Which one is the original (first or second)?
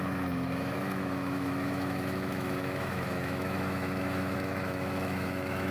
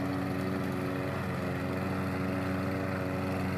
second